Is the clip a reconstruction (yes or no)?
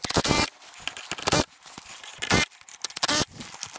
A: no